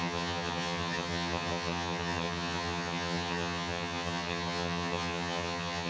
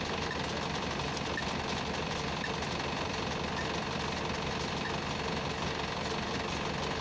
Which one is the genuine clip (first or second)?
second